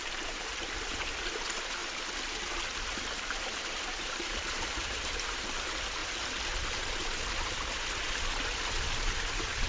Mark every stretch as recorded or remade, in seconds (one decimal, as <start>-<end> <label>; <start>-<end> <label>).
0.0-1.8 remade; 1.8-3.6 recorded; 3.6-6.0 remade; 6.0-9.0 recorded; 9.0-9.7 remade